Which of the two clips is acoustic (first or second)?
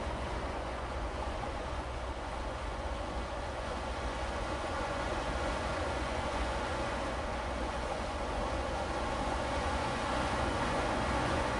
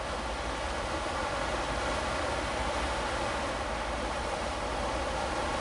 second